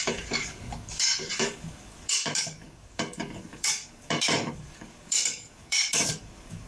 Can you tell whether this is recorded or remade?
remade